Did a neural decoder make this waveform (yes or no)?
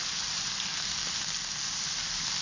no